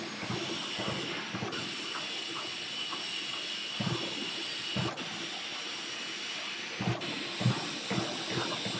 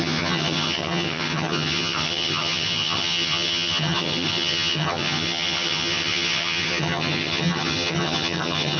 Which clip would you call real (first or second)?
first